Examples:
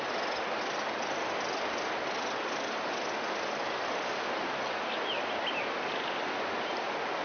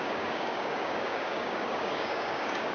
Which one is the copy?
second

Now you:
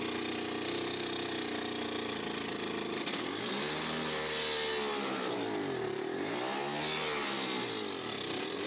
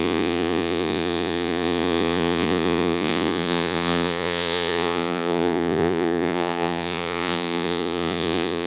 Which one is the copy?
second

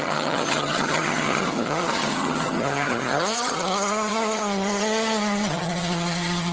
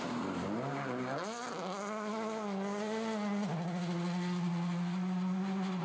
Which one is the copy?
first